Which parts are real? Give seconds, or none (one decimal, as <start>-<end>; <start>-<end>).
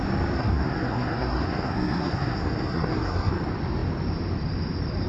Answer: 0.0-0.4; 3.3-5.1